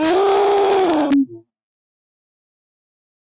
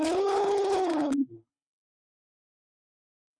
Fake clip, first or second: second